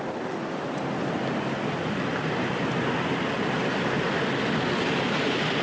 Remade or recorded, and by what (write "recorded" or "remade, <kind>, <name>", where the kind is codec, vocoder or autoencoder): recorded